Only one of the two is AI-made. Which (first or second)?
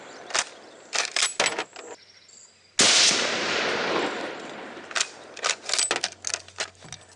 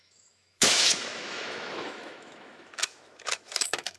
second